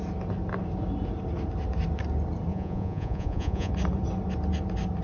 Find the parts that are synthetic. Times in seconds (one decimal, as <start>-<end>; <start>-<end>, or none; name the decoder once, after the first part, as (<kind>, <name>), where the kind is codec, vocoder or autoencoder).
2.5-3.7 (vocoder, Vocos)